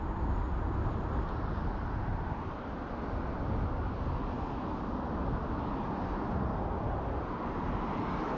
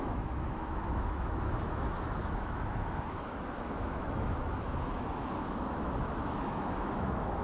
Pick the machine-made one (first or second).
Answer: second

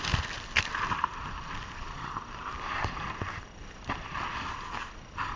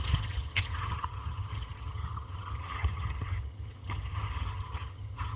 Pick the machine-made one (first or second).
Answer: second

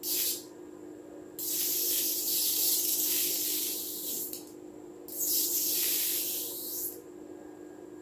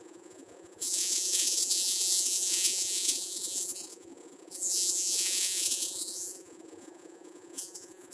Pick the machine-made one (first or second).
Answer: second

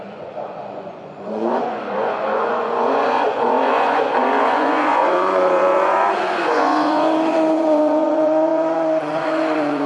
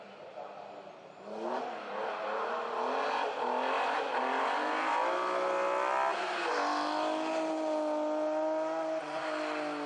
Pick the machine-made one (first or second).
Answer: first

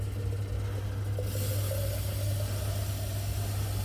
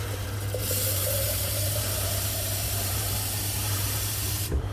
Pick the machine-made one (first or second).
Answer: second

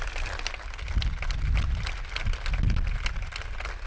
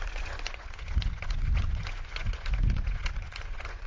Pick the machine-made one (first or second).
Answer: second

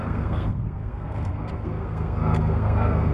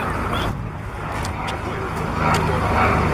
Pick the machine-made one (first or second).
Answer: first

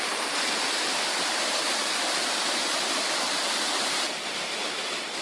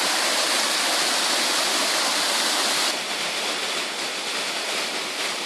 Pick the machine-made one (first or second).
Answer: first